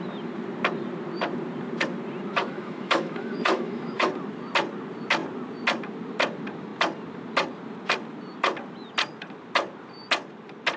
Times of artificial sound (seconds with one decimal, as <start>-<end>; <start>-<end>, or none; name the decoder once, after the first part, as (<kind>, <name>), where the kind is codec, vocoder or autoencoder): 2.4-4.1 (autoencoder, DAC-VAE)